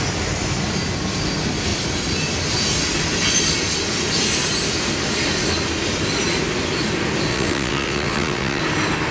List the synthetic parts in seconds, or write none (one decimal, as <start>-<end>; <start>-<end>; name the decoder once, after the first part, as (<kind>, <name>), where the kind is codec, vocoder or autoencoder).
7.3-8.6 (vocoder, WaveNeXt)